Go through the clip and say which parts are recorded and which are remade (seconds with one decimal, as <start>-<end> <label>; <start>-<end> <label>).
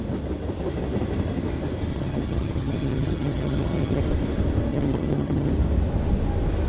0.0-1.9 recorded; 1.9-4.0 remade; 4.0-4.7 recorded; 4.7-5.5 remade; 5.5-6.7 recorded